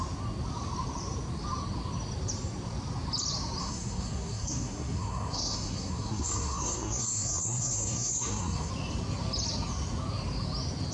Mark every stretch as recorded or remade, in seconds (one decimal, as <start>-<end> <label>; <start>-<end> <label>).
0.0-3.6 recorded; 3.6-8.7 remade; 8.7-10.9 recorded